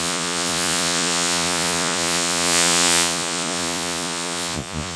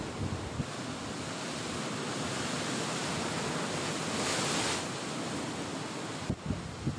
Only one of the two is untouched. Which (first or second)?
second